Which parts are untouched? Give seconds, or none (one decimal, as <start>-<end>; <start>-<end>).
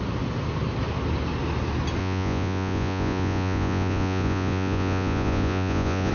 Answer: 0.0-2.0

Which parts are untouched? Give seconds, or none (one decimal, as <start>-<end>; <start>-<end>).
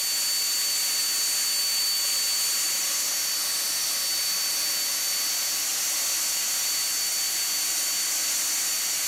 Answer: 0.0-9.1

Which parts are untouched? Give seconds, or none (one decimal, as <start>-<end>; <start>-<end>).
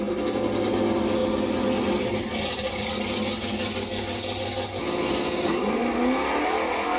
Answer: 0.0-7.0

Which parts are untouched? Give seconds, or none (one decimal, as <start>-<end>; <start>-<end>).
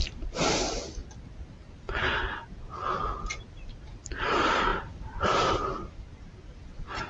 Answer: 1.0-3.4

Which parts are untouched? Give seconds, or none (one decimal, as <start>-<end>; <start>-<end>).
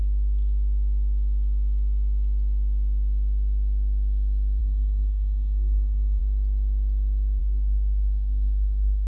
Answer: 0.0-4.6; 6.2-7.4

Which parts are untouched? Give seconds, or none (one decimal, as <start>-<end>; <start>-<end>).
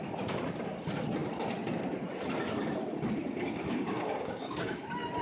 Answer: 0.0-3.3; 4.8-5.2